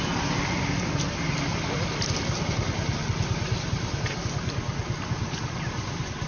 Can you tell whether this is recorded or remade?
recorded